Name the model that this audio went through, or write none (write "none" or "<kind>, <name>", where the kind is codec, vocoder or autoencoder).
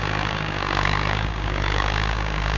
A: codec, DAC